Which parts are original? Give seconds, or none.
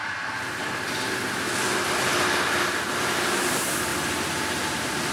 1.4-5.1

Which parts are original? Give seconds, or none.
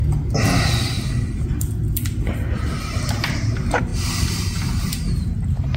0.0-2.8; 3.9-4.6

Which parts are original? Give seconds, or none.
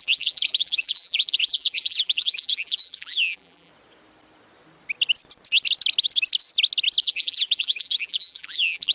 3.7-7.0